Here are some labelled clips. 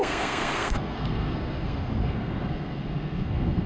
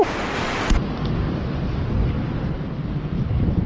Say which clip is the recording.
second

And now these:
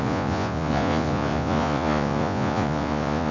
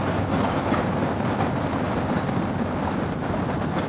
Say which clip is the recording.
second